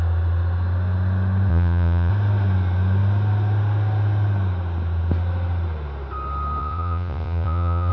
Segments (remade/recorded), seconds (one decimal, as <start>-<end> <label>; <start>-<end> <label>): 0.0-1.5 recorded; 1.5-2.1 remade; 2.1-6.6 recorded; 6.6-7.9 remade